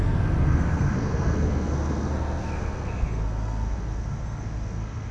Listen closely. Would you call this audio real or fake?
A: fake